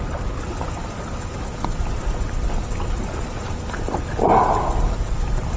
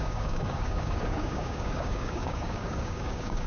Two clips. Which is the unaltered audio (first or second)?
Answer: first